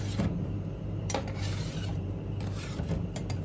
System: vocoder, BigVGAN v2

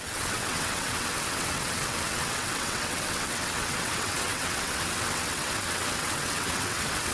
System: vocoder, WaveNeXt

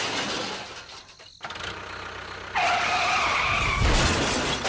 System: none